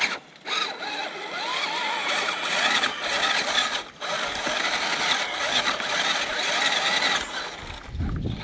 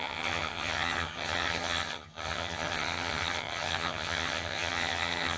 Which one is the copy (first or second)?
second